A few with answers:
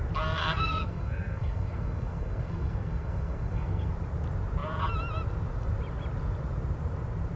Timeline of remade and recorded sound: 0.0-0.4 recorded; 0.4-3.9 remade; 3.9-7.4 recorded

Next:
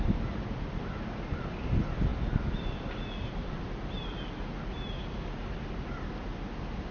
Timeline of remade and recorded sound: 0.0-6.9 recorded

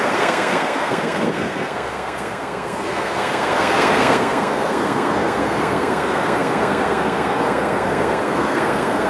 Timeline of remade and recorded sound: 0.0-9.1 remade

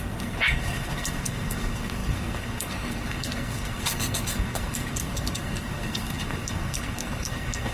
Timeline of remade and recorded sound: 0.0-7.7 remade

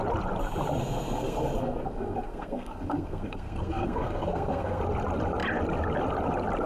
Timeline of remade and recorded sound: 0.0-0.8 recorded; 0.8-4.8 remade; 4.8-6.7 recorded

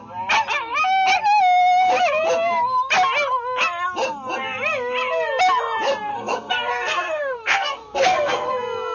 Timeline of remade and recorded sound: 0.0-6.1 recorded; 6.1-8.5 remade; 8.5-8.9 recorded

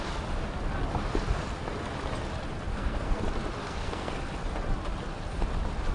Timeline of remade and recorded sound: 0.0-2.7 recorded; 2.7-3.2 remade; 3.2-3.6 recorded; 3.6-4.2 remade; 4.2-5.9 recorded